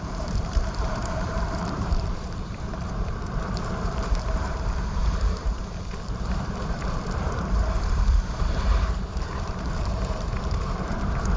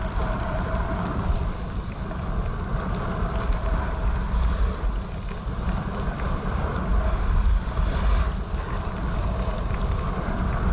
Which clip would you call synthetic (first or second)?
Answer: first